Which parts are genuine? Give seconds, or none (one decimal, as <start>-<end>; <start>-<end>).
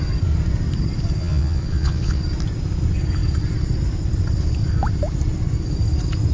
0.0-1.2; 2.2-6.3